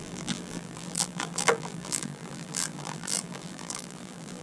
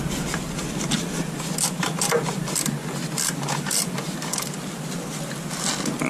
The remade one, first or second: first